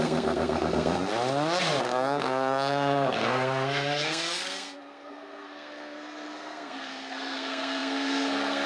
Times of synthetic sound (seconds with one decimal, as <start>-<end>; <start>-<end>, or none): 0.0-1.1; 1.8-8.7